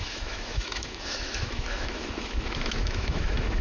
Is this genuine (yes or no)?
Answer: no